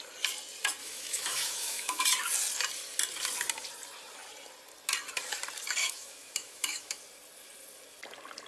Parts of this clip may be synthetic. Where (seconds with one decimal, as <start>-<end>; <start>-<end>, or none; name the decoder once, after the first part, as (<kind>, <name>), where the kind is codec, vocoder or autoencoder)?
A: 0.8-2.0 (autoencoder, DAC-VAE); 5.8-7.0